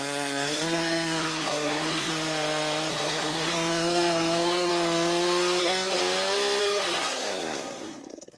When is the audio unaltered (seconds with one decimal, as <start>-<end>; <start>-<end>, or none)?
2.1-2.9; 4.7-5.6; 6.0-6.6